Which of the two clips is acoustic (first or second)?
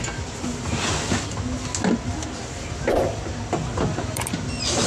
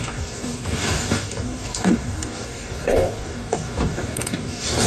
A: first